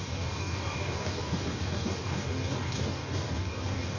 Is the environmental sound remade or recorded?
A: remade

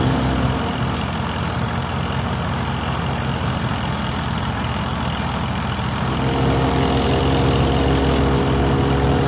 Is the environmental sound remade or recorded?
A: recorded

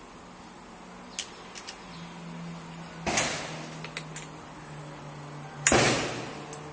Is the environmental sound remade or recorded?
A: recorded